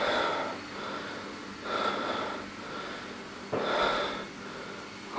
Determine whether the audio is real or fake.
real